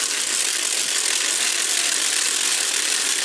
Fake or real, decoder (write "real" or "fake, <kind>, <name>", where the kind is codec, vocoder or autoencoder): real